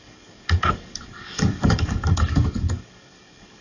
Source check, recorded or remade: remade